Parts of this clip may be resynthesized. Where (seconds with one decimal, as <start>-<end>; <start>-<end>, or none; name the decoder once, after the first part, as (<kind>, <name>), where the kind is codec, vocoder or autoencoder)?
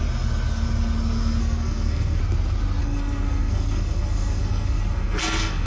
1.4-2.2 (codec, SNAC); 2.8-5.7